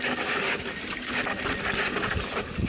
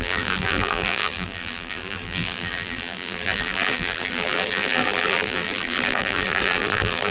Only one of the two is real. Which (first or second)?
first